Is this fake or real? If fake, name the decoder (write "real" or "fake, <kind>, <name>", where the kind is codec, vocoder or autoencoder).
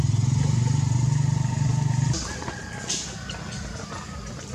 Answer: real